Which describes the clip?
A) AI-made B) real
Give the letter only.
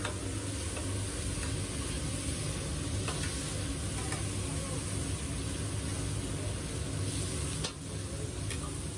B